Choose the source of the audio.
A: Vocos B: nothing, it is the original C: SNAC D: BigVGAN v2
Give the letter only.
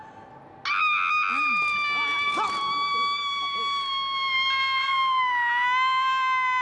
B